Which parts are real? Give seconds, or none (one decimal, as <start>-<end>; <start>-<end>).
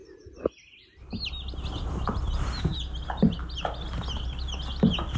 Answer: 0.0-5.2